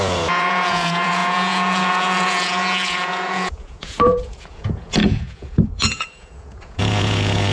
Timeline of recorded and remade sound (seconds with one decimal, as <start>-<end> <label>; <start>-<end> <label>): 0.0-7.5 remade

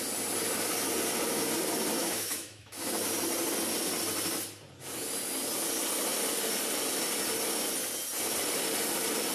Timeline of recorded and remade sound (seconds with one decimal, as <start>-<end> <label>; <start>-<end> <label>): 0.0-2.0 recorded; 2.0-2.9 remade; 2.9-9.3 recorded

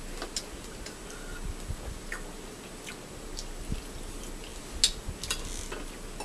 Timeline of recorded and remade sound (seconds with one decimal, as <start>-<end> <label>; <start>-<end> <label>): 0.0-6.2 recorded

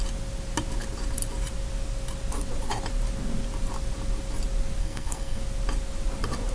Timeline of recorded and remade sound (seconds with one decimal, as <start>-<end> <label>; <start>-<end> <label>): 0.0-4.8 recorded; 4.8-5.4 remade; 5.4-6.5 recorded

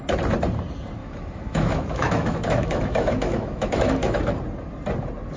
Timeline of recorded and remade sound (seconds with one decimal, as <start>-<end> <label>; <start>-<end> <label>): 0.0-1.0 recorded; 1.0-4.2 remade; 4.2-5.4 recorded

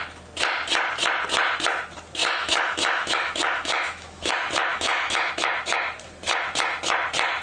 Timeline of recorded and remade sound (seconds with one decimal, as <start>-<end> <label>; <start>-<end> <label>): 0.0-2.2 recorded; 2.2-4.3 remade; 4.3-4.7 recorded; 4.7-5.3 remade; 5.3-7.4 recorded